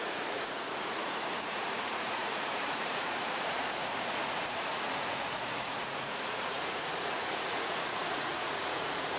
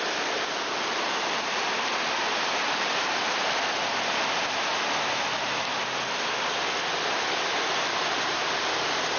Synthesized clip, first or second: first